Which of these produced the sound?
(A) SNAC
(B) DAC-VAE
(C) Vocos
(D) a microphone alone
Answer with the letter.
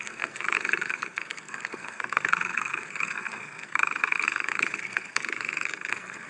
A